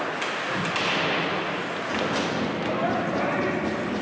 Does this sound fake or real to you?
real